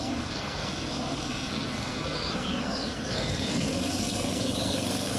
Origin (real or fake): fake